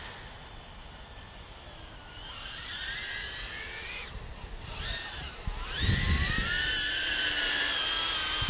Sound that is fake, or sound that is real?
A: real